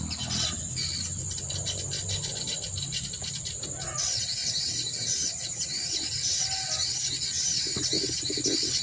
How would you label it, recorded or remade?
recorded